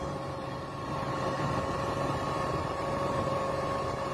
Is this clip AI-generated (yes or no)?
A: yes